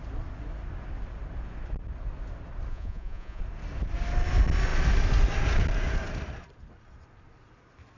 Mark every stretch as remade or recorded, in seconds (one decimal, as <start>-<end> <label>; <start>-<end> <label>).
0.0-2.7 recorded; 2.7-3.4 remade; 3.4-8.0 recorded